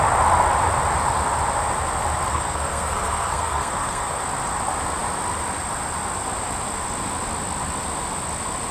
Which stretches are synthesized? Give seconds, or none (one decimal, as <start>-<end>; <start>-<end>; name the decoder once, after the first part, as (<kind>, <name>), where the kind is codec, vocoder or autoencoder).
2.3-4.2 (codec, SNAC)